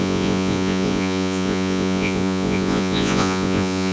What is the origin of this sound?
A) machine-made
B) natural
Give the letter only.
A